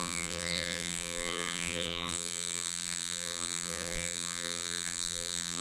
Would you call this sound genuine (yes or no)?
no